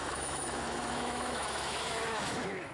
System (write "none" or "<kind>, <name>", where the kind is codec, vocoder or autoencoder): autoencoder, DAC-VAE